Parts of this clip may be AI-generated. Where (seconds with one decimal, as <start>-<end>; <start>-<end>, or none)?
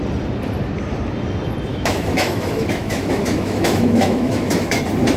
1.7-4.8